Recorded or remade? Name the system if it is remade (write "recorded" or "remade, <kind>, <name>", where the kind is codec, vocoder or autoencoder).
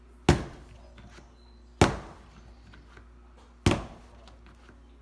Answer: recorded